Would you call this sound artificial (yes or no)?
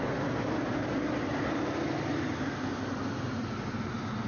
no